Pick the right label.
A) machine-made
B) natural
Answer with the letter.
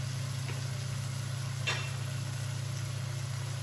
B